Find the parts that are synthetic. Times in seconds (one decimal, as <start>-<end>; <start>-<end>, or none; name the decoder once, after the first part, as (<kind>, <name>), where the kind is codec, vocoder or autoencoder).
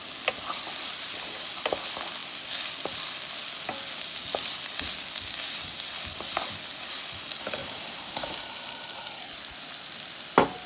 0.9-1.5 (vocoder, BigVGAN v2); 7.6-9.0